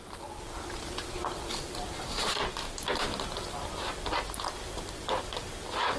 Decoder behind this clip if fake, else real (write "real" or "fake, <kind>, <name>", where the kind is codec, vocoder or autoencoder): real